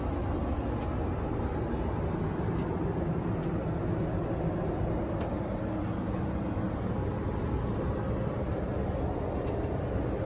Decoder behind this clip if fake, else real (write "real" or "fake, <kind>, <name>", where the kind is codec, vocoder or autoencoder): real